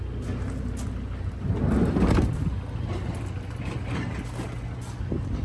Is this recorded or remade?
recorded